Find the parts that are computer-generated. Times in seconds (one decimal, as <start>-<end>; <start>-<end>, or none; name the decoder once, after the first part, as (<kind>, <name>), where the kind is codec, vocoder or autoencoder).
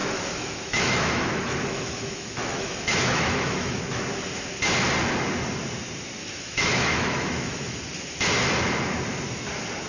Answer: 0.0-3.8 (autoencoder, DAC-VAE); 6.2-7.8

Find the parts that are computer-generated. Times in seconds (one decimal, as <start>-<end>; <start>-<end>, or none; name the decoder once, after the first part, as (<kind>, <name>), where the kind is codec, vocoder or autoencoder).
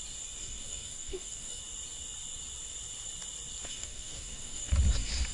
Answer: 0.4-1.6 (codec, DAC); 3.7-4.7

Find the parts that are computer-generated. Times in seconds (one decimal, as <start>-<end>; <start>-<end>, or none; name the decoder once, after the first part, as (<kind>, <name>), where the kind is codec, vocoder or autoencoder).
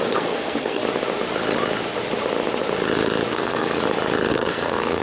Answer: 0.0-0.8 (codec, SNAC); 3.3-3.8; 4.3-5.0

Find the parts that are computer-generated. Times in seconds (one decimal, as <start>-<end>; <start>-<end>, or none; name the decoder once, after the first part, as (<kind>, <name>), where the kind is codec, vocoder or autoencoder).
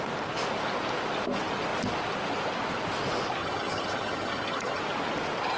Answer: 3.4-4.8 (vocoder, HiFi-GAN)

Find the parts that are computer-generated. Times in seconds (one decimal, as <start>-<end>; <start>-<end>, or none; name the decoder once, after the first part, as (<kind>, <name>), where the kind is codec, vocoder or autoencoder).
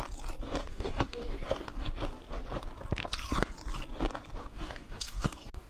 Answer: 0.7-1.9 (codec, DAC); 4.4-5.7